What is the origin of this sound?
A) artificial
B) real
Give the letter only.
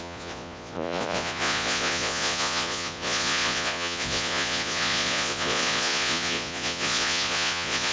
A